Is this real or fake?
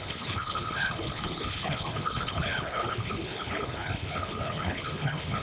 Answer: fake